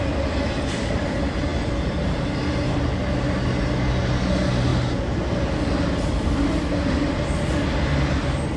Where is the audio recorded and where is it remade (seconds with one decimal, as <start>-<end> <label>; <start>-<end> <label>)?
0.0-8.6 recorded